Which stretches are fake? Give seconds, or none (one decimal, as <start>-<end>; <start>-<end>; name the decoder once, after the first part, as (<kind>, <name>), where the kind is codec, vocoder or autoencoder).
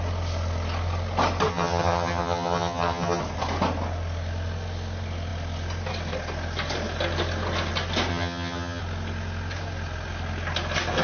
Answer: 1.5-3.2 (vocoder, HiFi-GAN); 8.1-8.8